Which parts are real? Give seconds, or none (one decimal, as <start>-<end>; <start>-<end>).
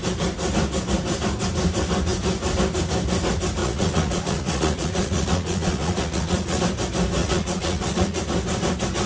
0.0-3.6; 6.6-7.2; 8.2-9.1